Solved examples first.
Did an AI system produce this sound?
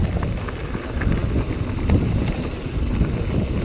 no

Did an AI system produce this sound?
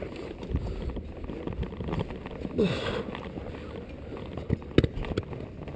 no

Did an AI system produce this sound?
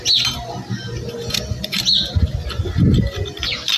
no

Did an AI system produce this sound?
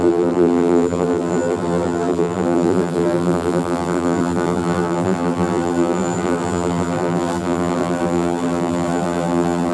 yes